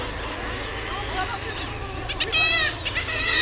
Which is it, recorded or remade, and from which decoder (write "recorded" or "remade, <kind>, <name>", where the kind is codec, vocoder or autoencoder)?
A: recorded